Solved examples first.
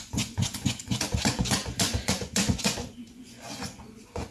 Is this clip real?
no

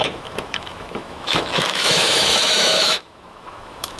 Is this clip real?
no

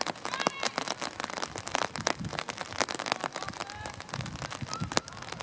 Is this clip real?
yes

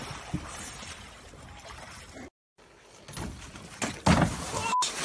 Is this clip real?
yes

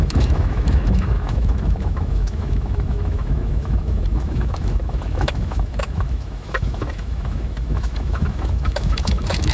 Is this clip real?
no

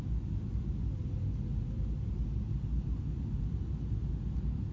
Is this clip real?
yes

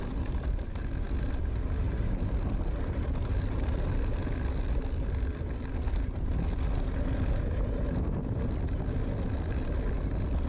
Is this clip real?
yes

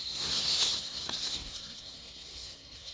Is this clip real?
no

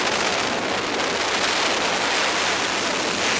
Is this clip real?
yes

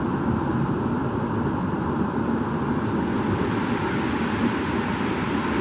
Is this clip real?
yes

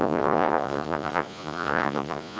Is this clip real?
no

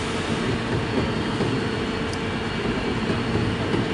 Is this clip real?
yes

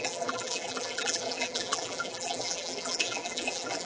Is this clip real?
no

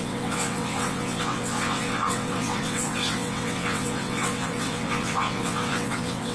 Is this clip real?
no